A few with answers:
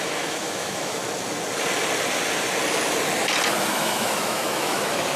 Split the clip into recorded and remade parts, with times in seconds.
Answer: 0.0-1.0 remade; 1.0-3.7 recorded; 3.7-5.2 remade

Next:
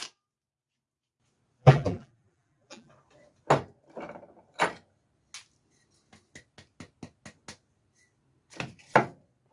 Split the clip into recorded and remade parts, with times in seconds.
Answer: 0.0-1.6 recorded; 1.6-2.9 remade; 2.9-9.5 recorded

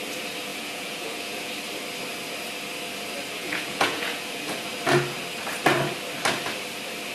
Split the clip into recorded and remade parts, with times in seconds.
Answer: 0.0-0.5 recorded; 0.5-1.5 remade; 1.5-3.4 recorded; 3.4-4.7 remade; 4.7-7.1 recorded

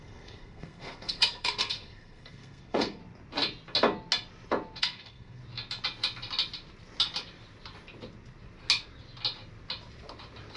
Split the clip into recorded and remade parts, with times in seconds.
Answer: 0.0-3.0 remade; 3.0-4.8 recorded; 4.8-5.4 remade; 5.4-10.6 recorded

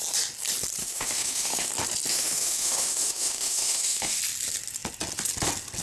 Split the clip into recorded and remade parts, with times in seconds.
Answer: 0.0-0.8 recorded; 0.8-1.7 remade; 1.7-2.1 recorded; 2.1-4.2 remade; 4.2-5.8 recorded

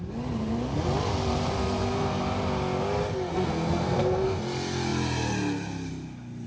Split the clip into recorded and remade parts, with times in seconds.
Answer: 0.0-1.6 recorded; 1.6-2.2 remade; 2.2-3.3 recorded; 3.3-4.4 remade; 4.4-6.5 recorded

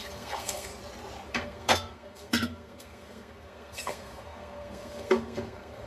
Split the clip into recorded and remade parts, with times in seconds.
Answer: 0.0-0.7 remade; 0.7-1.3 recorded; 1.3-5.9 remade

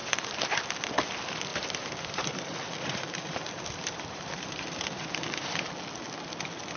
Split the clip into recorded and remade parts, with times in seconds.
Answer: 0.0-0.6 remade; 0.6-1.5 recorded; 1.5-5.5 remade; 5.5-6.8 recorded